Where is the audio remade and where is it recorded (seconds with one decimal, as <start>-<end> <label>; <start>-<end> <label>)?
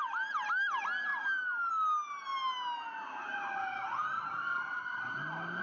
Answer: 0.0-5.6 recorded